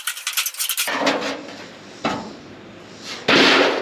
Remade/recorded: recorded